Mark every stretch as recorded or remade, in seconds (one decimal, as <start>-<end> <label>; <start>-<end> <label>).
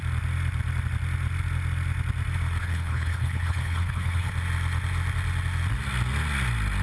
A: 0.0-2.6 recorded; 2.6-4.3 remade; 4.3-6.8 recorded